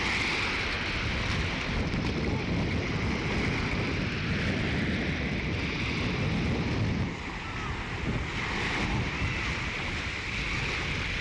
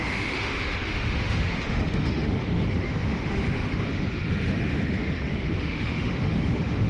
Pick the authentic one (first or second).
first